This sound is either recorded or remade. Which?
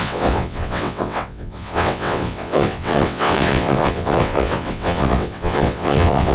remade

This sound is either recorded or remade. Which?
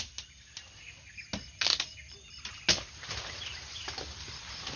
recorded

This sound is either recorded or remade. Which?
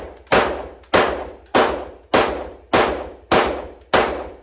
recorded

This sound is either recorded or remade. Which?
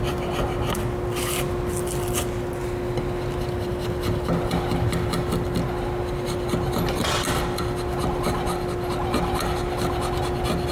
recorded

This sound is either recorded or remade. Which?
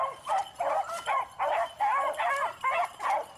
recorded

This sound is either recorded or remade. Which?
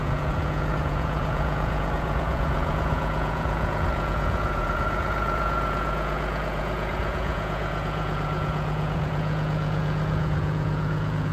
remade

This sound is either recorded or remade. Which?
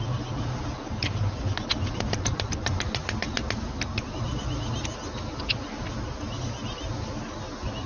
recorded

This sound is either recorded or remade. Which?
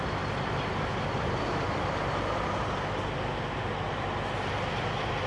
recorded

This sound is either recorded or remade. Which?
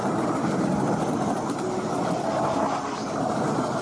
recorded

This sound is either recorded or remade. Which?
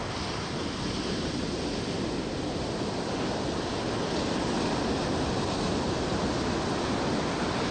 recorded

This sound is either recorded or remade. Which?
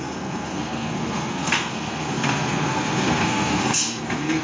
remade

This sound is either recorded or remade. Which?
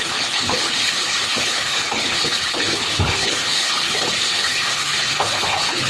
remade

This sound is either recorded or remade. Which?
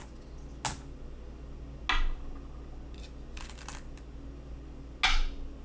recorded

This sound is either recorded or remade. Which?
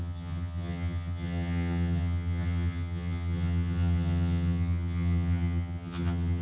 remade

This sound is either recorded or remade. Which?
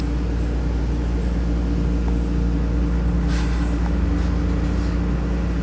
recorded